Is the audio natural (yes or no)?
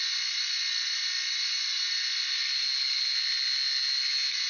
yes